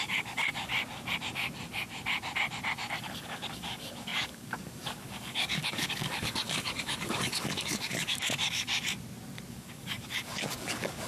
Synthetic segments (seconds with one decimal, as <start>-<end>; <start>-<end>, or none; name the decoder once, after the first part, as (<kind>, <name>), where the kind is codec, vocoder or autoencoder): 0.0-0.7 (codec, DAC); 3.0-8.7; 9.5-11.1